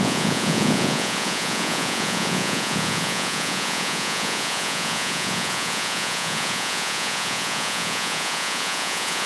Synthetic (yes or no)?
yes